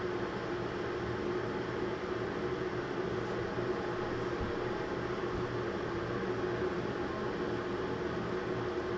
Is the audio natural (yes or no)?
yes